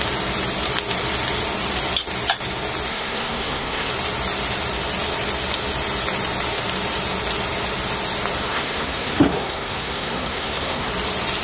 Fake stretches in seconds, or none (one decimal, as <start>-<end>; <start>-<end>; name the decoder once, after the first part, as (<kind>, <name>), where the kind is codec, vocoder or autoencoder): 2.9-3.9 (codec, SNAC); 8.5-10.9